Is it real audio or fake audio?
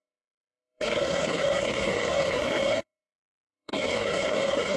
fake